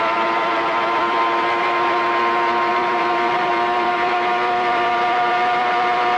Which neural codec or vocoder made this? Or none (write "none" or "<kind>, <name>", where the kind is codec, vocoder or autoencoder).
vocoder, BigVGAN v2